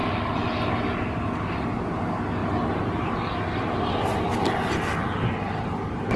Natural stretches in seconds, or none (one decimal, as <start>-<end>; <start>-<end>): 0.0-6.2